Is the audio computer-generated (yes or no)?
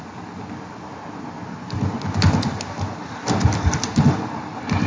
no